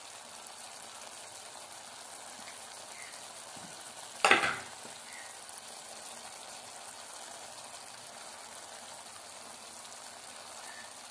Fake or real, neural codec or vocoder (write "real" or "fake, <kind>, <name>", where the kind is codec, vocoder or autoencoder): real